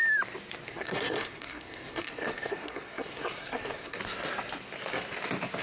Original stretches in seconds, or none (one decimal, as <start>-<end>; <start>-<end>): 0.0-0.7; 4.0-5.6